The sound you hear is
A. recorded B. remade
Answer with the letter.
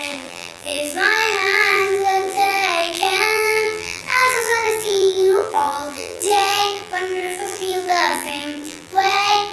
B